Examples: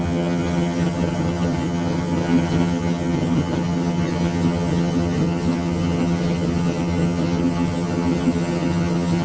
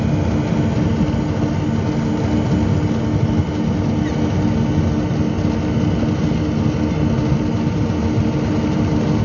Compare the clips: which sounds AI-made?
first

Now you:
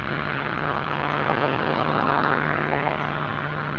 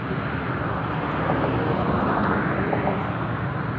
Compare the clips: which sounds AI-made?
first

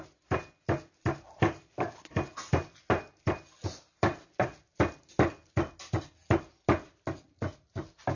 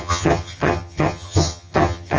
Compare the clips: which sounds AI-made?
second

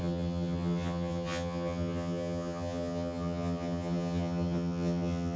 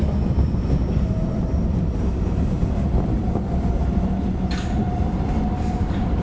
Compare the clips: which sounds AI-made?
first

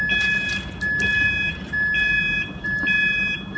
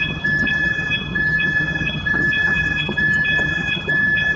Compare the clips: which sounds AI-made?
second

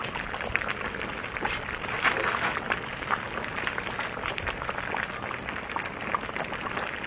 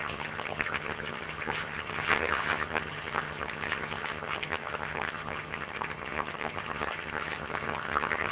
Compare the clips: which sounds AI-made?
second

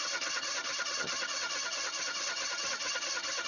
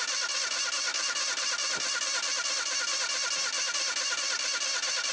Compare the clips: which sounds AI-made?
first